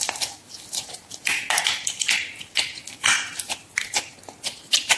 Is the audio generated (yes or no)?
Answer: no